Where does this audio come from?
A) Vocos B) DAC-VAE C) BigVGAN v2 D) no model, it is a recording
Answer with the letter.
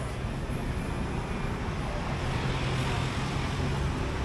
D